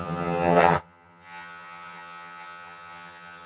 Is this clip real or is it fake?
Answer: fake